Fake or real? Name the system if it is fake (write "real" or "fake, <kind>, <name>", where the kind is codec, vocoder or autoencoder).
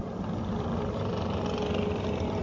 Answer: real